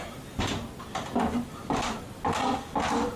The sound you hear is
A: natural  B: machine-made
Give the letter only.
A